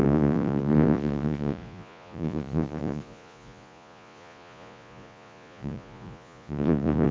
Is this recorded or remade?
remade